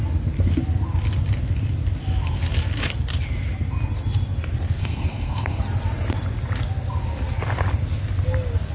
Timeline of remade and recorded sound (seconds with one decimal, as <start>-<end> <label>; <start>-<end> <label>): 0.0-4.8 recorded; 4.8-5.6 remade; 5.6-8.7 recorded